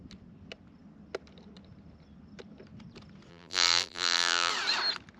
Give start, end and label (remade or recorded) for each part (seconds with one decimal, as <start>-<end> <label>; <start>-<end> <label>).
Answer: 0.0-3.3 recorded; 3.3-4.5 remade; 4.5-5.2 recorded